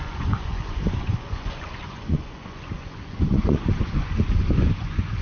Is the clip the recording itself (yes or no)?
no